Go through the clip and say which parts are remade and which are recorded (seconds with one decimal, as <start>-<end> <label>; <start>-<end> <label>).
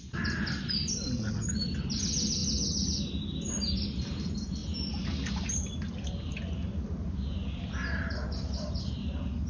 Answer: 0.0-9.5 recorded